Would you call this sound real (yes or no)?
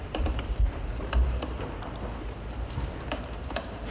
no